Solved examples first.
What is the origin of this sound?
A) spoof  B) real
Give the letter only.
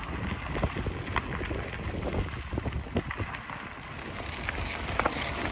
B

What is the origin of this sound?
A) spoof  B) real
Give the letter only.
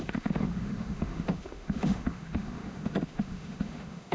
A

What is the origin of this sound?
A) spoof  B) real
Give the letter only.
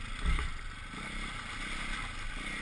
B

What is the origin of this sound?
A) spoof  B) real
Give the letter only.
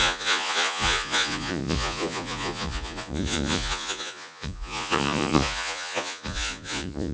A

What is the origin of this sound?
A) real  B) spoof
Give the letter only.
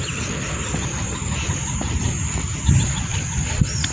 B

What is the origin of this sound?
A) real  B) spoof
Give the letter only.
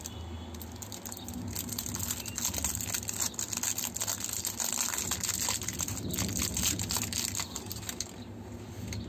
A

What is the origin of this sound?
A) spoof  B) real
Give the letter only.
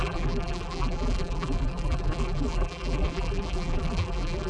A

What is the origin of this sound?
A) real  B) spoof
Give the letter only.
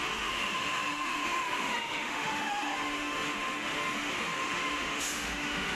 B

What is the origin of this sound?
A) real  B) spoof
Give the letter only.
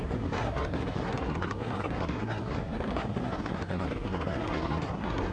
B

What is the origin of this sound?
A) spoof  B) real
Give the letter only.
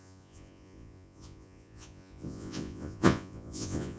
A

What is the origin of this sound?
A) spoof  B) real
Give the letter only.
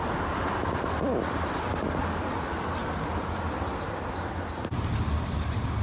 B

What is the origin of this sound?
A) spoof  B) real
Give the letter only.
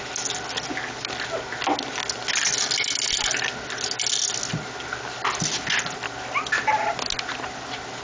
B